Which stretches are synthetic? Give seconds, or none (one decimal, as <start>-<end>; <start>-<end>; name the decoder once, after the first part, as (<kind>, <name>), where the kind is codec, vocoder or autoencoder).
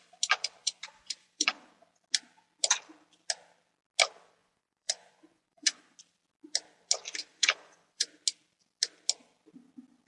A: 0.6-1.7 (vocoder, Vocos); 4.4-6.0; 7.3-8.1